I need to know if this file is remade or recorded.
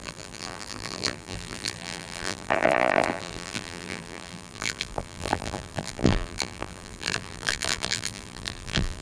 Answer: remade